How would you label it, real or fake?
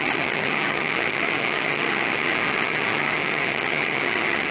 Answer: fake